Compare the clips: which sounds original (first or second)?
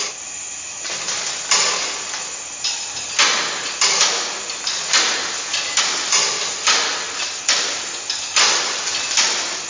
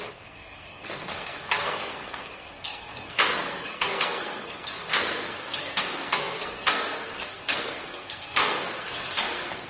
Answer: first